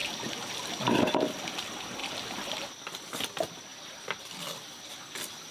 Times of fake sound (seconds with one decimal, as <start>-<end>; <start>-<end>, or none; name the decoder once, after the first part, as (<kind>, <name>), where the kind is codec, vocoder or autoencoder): none